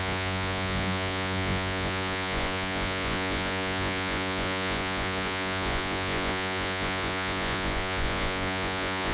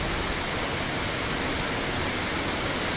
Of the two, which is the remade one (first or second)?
first